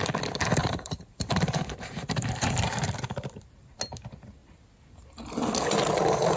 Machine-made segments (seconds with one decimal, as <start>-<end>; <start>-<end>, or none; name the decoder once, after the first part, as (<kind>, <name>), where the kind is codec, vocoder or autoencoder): 0.6-3.8 (vocoder, BigVGAN v2)